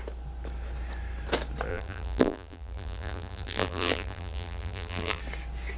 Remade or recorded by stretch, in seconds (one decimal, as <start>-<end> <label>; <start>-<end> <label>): 0.0-1.7 recorded; 1.7-5.2 remade; 5.2-5.8 recorded